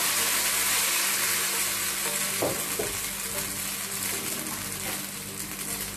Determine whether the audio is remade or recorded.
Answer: recorded